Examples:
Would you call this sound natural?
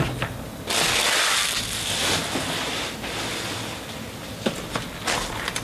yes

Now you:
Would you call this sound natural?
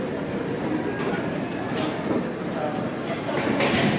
yes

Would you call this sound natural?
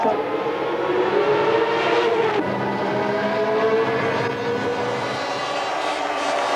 yes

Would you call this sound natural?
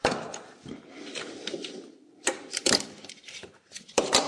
no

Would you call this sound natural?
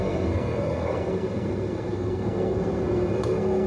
no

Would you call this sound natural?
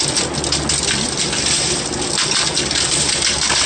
yes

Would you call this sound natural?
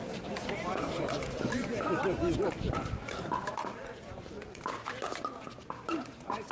no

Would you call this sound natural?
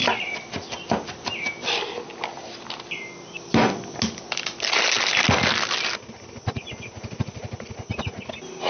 yes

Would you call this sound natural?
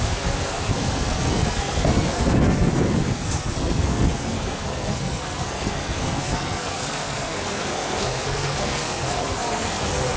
no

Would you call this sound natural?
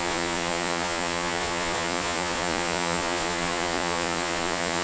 no